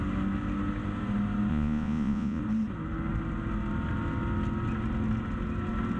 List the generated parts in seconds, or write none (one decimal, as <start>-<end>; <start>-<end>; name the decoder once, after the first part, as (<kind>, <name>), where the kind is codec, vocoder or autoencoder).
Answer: 1.5-2.4 (vocoder, Vocos)